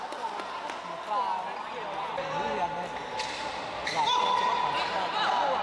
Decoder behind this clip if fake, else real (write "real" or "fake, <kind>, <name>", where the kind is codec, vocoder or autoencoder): real